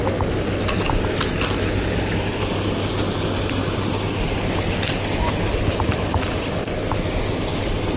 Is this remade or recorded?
recorded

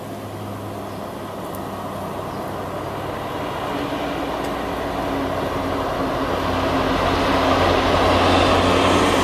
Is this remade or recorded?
recorded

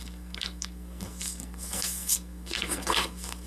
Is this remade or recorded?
remade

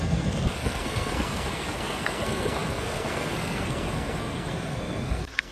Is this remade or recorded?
remade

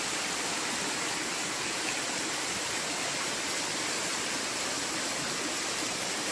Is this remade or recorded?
recorded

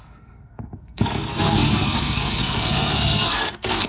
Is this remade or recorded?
remade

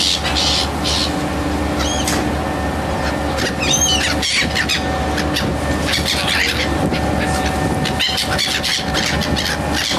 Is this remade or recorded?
recorded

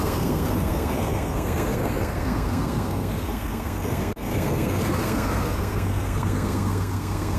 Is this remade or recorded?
remade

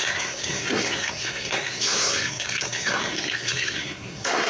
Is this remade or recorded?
remade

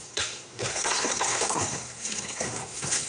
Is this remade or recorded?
remade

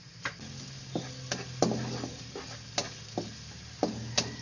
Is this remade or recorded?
recorded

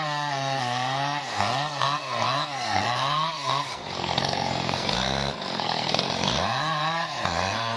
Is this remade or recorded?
remade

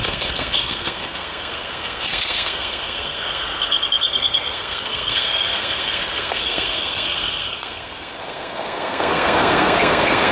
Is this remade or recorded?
remade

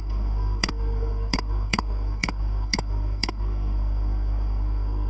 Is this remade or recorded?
remade